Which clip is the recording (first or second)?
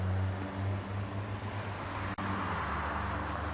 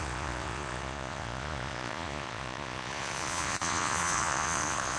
first